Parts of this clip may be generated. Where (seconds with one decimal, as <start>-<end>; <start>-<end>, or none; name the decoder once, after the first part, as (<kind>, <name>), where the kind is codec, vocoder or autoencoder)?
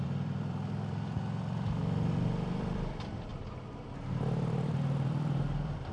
0.0-5.9 (vocoder, BigVGAN v2)